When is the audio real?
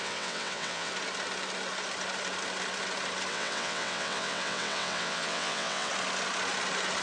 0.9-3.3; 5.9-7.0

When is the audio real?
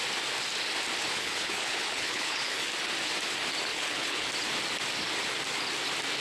0.0-1.0; 2.7-3.7; 4.3-6.2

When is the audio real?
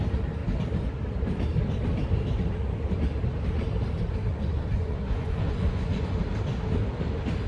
0.0-4.3; 6.2-7.5